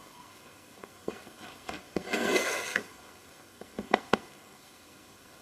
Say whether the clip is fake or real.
fake